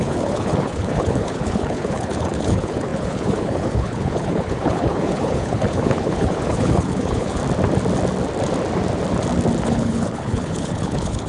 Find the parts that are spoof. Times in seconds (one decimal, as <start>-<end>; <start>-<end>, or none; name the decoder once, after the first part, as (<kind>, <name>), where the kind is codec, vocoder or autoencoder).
0.0-7.4 (codec, HILCodec); 9.6-11.3